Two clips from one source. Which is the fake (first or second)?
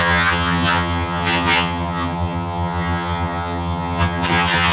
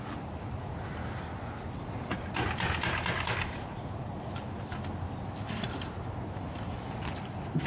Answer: first